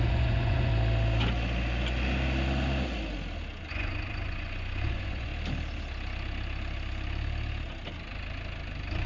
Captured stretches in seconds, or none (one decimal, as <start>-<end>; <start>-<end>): 0.7-3.7; 5.3-9.1